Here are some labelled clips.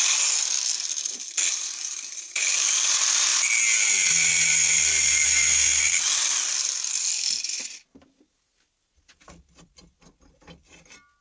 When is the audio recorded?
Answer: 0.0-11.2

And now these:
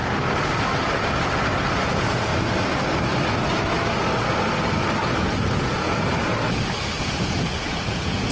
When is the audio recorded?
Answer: 0.0-1.8; 2.3-5.3; 6.1-7.0

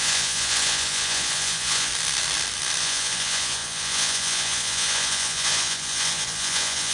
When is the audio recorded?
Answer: 1.9-2.8

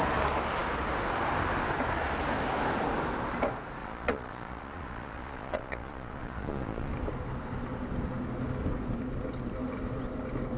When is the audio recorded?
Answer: 0.0-3.8; 6.9-10.6